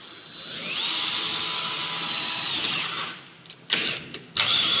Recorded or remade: recorded